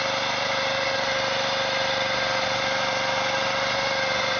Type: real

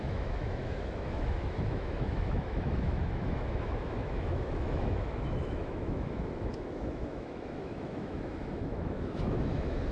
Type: fake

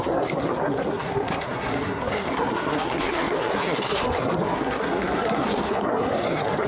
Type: fake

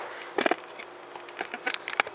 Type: real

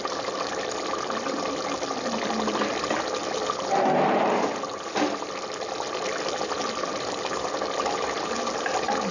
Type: real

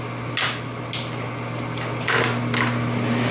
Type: real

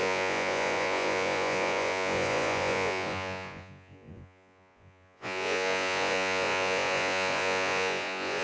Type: fake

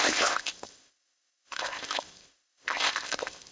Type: fake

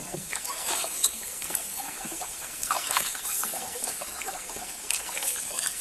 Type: fake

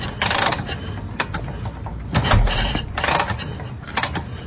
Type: fake